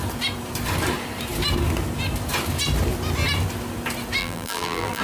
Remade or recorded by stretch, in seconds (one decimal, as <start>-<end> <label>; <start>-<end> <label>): 0.0-4.2 recorded; 4.2-5.0 remade